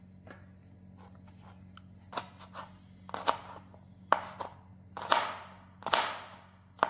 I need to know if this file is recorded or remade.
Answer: recorded